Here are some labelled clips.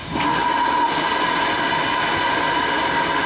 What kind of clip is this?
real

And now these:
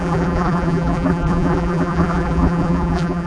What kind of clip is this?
fake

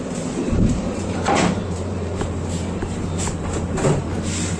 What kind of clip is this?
fake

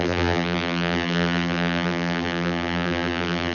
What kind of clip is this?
fake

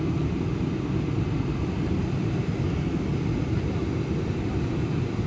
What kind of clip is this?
real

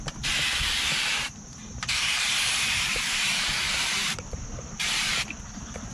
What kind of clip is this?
fake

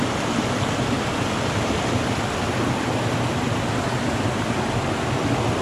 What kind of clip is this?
real